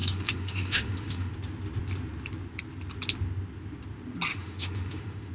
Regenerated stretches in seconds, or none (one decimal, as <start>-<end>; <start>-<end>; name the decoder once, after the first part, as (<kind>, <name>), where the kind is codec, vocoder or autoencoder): 0.0-1.3 (autoencoder, DAC-VAE); 4.3-5.3